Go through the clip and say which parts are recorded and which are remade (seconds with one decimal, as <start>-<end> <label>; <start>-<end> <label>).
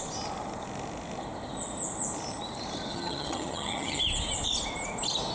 0.0-2.9 recorded; 2.9-4.0 remade; 4.0-5.3 recorded